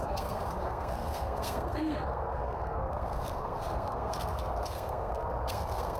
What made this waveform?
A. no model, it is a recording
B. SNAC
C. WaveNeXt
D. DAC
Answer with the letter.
B